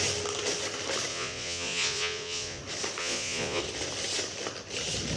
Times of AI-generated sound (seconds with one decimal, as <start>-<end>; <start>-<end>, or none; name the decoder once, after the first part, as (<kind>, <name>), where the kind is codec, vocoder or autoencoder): 1.1-2.6 (vocoder, Vocos); 3.0-3.6

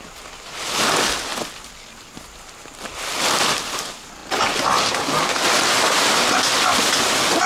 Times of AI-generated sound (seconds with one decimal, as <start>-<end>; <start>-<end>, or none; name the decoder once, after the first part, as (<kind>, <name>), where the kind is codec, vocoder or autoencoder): none

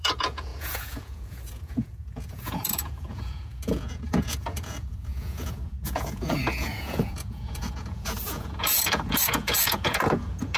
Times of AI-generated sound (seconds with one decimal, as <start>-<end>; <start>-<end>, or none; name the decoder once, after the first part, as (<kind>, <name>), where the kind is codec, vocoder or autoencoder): 0.0-10.6 (vocoder, Vocos)

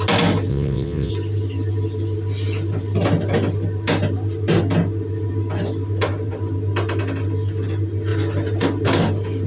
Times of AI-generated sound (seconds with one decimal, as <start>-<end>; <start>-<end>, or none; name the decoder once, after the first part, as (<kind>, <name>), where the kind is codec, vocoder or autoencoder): 0.5-1.1 (vocoder, WaveNeXt)

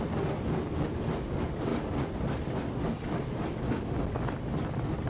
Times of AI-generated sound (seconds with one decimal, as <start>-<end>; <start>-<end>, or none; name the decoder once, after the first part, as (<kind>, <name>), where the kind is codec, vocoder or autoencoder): none

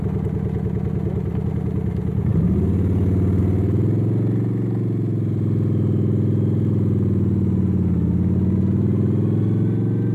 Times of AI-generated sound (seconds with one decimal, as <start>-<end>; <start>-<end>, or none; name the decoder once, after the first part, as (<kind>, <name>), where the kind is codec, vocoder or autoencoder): none

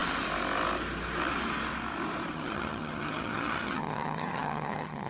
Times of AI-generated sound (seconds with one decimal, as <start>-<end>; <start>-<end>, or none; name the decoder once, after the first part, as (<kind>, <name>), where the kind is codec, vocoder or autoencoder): 2.3-5.1 (vocoder, HiFi-GAN)